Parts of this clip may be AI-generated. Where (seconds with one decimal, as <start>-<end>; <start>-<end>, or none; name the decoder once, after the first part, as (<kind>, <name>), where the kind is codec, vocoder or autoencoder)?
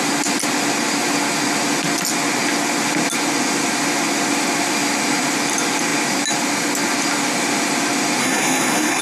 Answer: 8.2-9.0 (codec, SNAC)